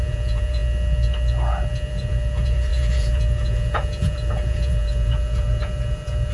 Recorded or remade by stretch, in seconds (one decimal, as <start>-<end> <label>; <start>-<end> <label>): 0.0-0.6 remade; 0.6-1.9 recorded; 1.9-6.3 remade

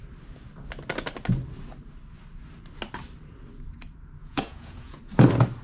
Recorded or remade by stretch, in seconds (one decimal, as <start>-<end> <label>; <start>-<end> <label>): 0.0-4.2 recorded; 4.2-5.0 remade; 5.0-5.6 recorded

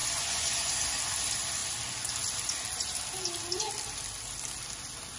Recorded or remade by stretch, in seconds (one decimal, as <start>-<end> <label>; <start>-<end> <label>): 0.0-0.7 remade; 0.7-5.2 recorded